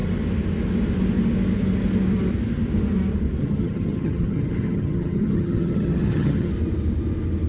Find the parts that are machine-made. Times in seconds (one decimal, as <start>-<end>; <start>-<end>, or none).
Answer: 3.4-6.5